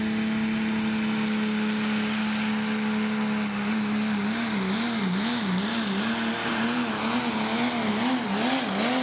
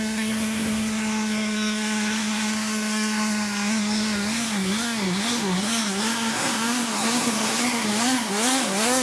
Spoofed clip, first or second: second